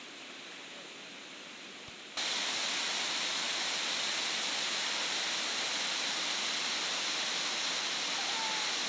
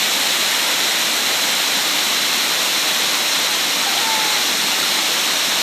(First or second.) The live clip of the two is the first